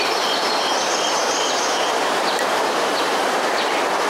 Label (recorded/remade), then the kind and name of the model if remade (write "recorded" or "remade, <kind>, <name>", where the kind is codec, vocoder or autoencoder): remade, vocoder, BigVGAN v2